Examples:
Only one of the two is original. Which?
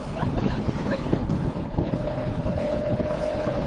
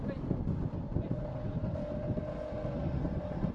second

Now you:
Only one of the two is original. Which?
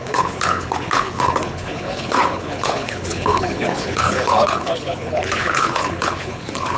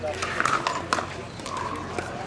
second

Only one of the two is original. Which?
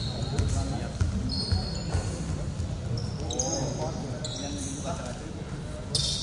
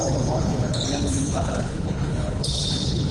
first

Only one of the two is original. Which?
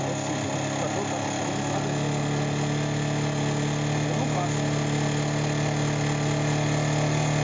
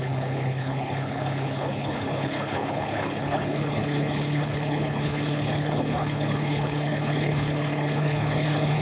first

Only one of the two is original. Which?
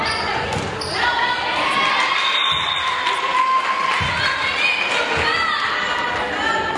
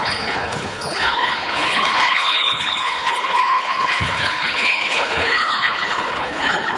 first